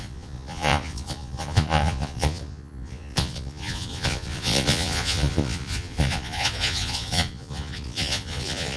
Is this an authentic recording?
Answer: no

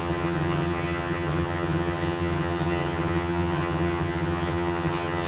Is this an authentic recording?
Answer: no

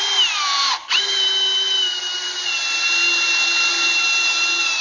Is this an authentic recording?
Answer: yes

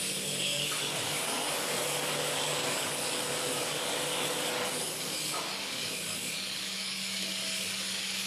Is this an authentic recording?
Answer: no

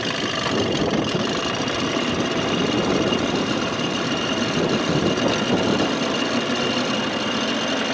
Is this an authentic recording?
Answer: yes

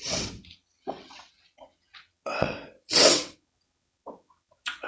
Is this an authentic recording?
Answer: no